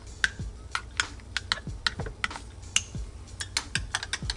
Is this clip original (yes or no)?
yes